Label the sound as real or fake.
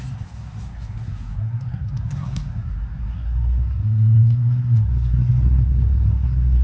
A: fake